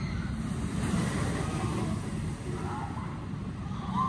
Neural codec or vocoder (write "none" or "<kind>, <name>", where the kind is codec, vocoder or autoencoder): none